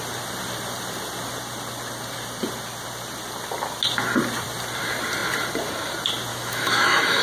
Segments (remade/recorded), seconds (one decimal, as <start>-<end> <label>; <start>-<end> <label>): 0.0-6.3 recorded; 6.3-7.2 remade